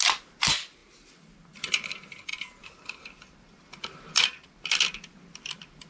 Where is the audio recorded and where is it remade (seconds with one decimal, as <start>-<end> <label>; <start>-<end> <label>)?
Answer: 0.0-5.9 recorded